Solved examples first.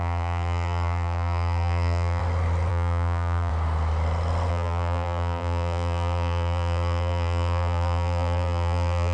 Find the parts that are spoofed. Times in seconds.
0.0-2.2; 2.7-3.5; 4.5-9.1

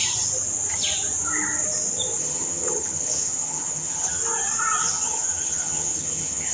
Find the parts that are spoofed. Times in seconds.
2.2-4.2; 4.9-6.5

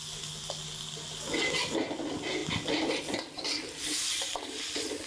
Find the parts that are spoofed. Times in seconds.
none